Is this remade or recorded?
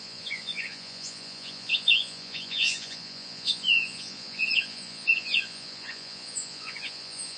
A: remade